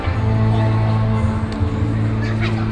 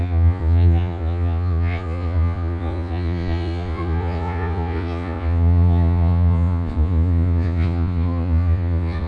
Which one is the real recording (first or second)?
first